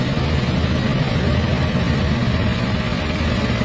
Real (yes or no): yes